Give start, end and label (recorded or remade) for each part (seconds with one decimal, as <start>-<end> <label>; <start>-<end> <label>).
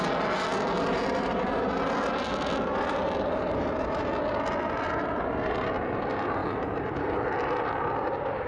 0.0-6.4 recorded; 6.4-7.0 remade; 7.0-8.5 recorded